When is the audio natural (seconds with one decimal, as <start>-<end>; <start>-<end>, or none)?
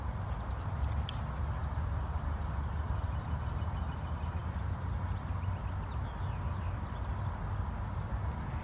0.0-8.6